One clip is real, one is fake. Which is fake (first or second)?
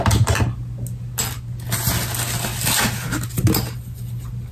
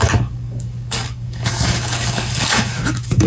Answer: second